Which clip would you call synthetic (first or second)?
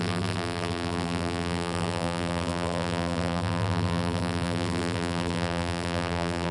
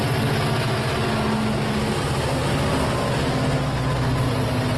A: first